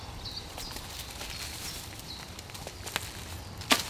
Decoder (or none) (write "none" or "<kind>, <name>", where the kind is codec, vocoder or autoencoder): none